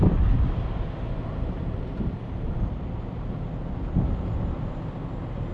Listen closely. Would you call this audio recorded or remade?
recorded